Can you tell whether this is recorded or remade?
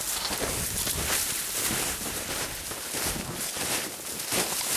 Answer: recorded